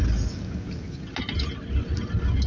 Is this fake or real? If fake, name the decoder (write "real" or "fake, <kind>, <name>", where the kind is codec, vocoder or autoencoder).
real